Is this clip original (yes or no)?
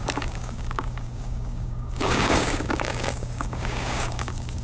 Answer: no